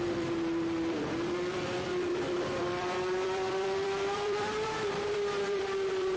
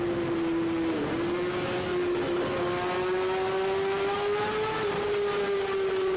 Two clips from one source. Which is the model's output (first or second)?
first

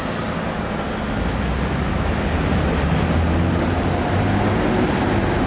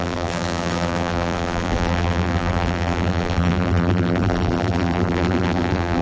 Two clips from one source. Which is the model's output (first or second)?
second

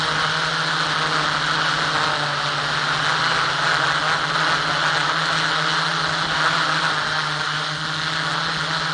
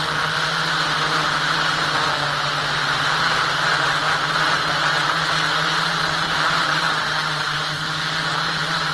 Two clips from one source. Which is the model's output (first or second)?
second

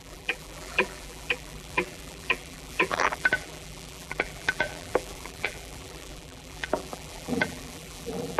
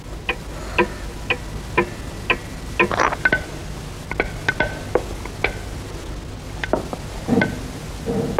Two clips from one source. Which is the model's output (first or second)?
first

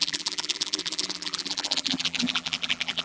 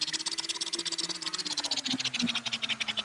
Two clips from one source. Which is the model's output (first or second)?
first